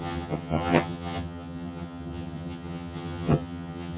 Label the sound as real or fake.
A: fake